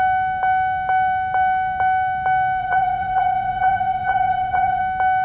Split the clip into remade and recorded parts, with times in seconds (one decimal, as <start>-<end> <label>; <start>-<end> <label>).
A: 0.0-2.6 recorded; 2.6-4.8 remade; 4.8-5.2 recorded